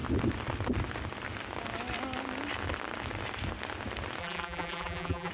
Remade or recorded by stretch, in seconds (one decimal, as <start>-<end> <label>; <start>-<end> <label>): 0.0-4.2 recorded; 4.2-5.3 remade